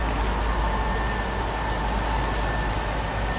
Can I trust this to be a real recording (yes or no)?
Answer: yes